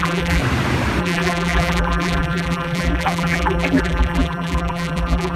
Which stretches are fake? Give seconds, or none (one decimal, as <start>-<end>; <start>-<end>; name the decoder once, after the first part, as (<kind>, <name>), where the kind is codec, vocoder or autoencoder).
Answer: 0.0-0.4 (vocoder, BigVGAN v2); 1.0-5.4